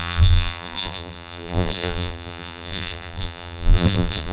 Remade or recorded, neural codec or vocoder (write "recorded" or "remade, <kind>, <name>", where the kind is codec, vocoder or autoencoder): remade, vocoder, BigVGAN v2